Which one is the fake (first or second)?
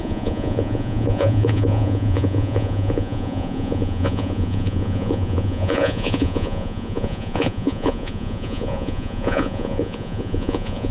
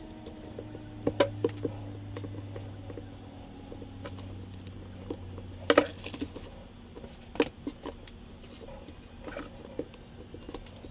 first